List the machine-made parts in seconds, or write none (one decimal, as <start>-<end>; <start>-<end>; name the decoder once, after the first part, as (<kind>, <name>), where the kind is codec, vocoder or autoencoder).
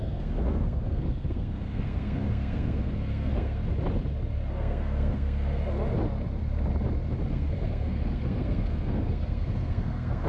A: 0.0-3.6 (codec, SNAC); 4.5-5.6; 7.3-10.3